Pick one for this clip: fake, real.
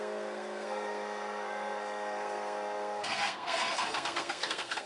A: fake